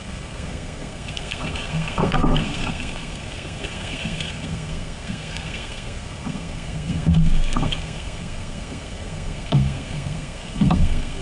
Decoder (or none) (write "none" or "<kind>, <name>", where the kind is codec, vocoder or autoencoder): codec, SNAC